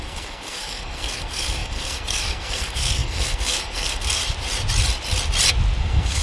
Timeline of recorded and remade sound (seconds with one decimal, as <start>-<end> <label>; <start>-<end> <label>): 0.0-4.2 remade; 4.2-5.8 recorded; 5.8-6.2 remade